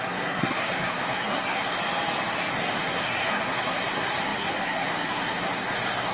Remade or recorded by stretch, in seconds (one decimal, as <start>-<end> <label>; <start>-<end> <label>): 0.0-1.7 remade; 1.7-2.5 recorded; 2.5-6.1 remade